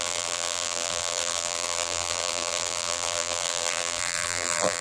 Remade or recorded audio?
remade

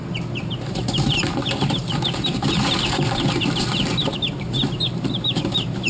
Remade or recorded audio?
remade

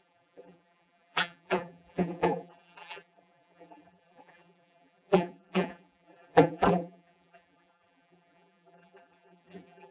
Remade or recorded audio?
remade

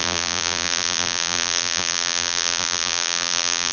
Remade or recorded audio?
remade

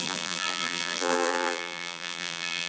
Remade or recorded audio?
remade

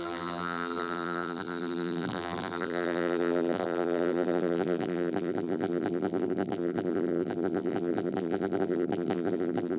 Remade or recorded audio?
remade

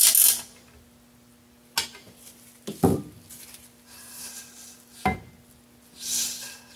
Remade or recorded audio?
recorded